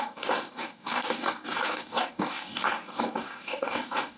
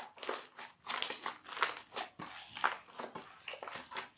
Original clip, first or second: second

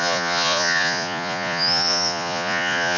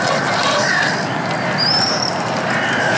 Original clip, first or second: second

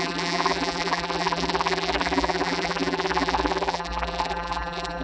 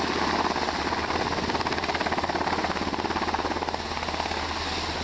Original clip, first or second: second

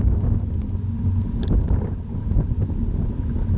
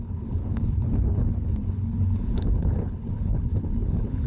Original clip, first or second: first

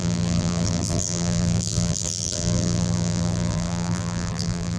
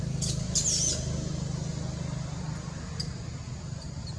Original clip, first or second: second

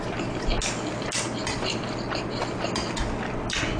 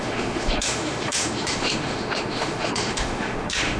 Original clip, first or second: first